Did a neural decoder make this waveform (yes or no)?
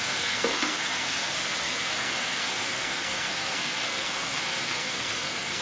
yes